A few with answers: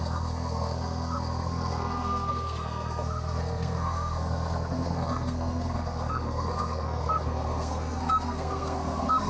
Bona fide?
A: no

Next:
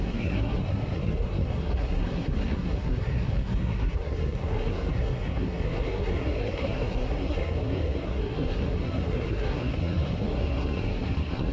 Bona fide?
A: no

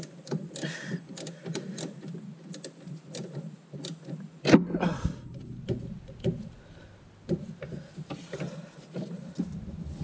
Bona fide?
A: yes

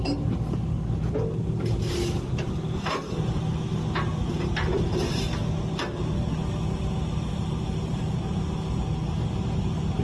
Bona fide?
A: yes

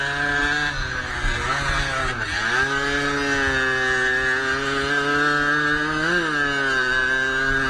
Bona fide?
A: yes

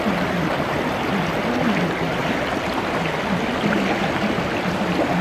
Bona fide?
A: yes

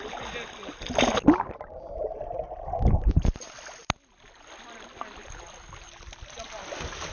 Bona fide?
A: yes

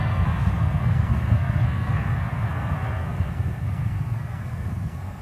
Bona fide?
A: no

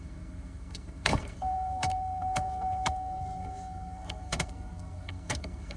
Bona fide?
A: no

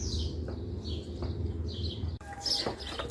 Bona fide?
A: yes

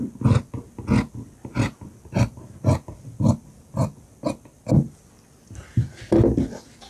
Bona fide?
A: yes